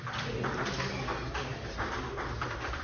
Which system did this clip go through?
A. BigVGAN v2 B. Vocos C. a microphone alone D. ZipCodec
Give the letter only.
C